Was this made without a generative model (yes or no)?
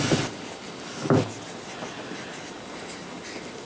yes